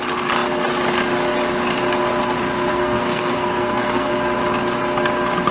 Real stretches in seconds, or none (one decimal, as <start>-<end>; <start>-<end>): 0.0-2.7; 4.1-5.5